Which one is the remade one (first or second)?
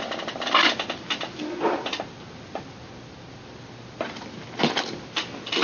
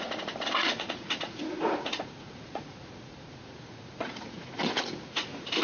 second